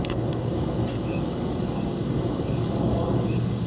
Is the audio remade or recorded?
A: remade